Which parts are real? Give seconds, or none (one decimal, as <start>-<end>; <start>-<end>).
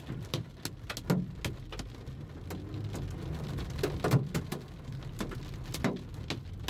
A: 0.0-6.7